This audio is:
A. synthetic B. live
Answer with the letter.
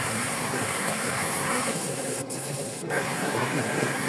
A